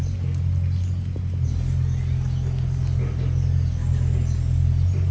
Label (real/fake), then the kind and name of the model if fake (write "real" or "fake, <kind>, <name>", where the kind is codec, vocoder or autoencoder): real